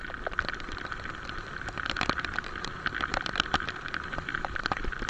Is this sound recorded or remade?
remade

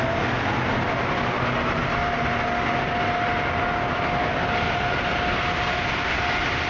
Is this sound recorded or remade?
recorded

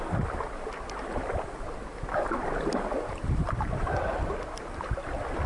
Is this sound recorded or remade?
recorded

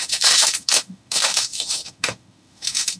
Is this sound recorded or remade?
remade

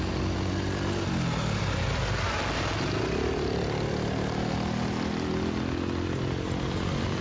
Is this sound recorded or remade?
recorded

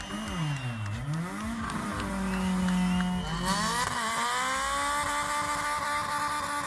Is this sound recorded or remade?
recorded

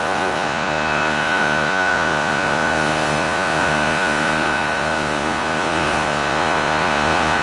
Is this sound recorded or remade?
remade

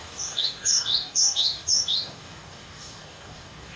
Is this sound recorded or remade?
remade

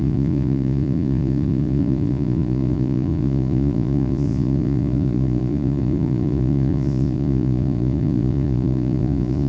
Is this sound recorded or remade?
remade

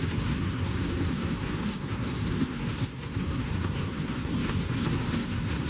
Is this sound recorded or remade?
remade